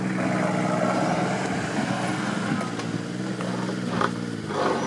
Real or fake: real